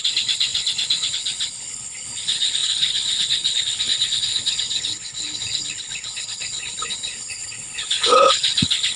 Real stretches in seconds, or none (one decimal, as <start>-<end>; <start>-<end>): none